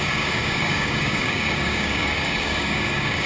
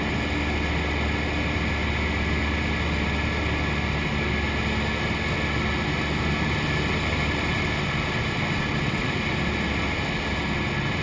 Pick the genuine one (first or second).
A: second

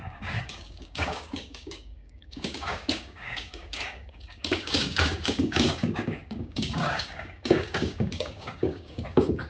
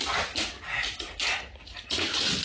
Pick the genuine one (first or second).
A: second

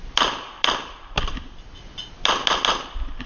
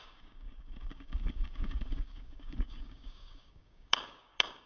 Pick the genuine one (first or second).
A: first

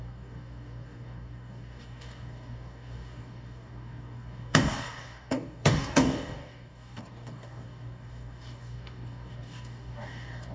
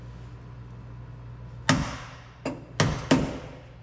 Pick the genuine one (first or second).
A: second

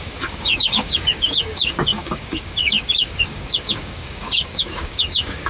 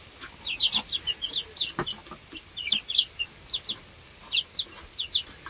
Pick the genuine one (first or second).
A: second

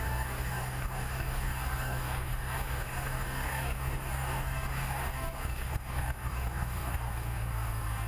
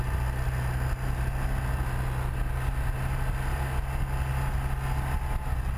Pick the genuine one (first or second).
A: second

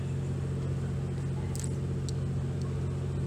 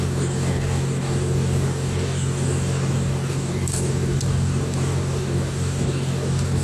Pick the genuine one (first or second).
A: first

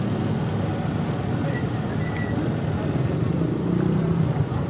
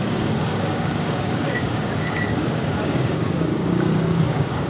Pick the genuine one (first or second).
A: first